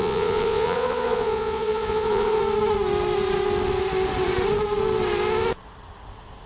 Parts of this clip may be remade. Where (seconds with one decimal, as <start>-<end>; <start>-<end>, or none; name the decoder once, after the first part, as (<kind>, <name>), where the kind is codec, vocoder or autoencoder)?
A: 0.0-2.4 (vocoder, Vocos)